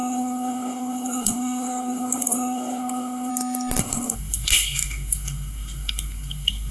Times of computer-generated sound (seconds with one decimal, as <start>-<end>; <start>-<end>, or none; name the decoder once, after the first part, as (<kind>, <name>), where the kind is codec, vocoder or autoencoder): 0.0-3.3 (codec, SNAC); 3.8-6.7